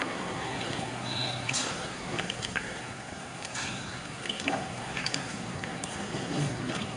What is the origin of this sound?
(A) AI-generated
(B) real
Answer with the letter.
A